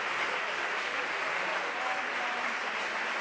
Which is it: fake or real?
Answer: real